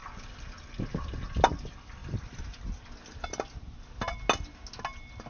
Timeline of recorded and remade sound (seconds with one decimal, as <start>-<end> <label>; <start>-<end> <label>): 0.0-0.8 remade; 0.8-5.3 recorded